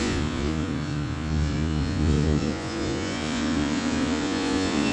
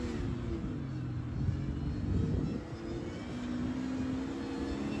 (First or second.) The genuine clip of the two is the second